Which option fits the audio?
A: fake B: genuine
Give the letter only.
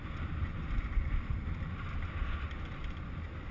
B